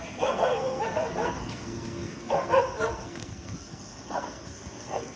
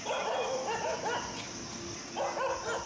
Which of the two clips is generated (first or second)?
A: first